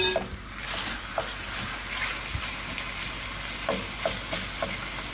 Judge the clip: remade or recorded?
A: recorded